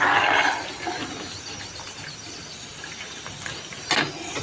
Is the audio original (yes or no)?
yes